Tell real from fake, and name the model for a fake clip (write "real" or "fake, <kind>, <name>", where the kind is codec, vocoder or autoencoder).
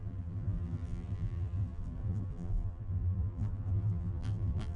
fake, vocoder, BigVGAN v2